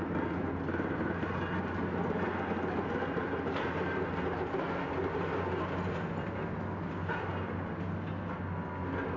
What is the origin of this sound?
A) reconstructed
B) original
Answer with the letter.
B